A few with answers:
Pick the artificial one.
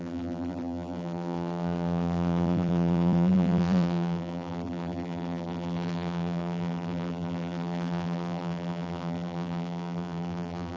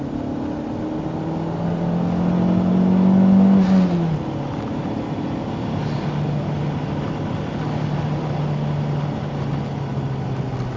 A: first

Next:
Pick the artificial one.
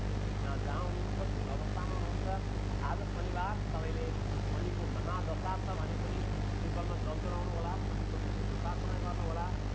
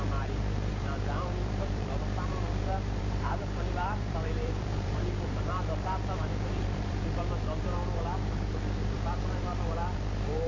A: second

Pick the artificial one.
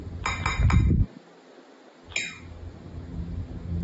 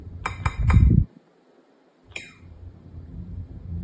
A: second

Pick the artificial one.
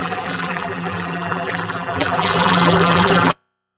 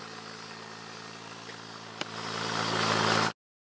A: first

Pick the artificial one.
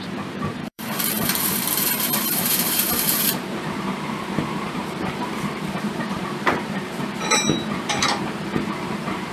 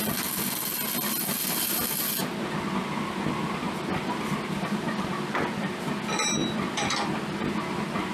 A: first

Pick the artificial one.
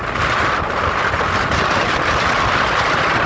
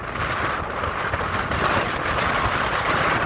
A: first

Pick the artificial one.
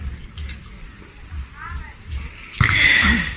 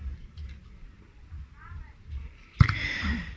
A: second